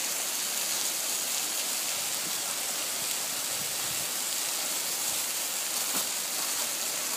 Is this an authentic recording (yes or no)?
yes